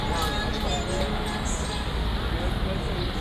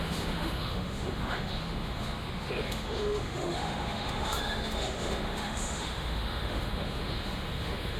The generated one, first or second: second